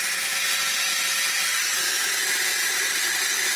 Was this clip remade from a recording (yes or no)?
yes